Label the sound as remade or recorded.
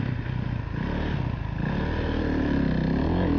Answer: recorded